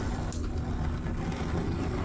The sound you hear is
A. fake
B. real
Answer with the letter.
B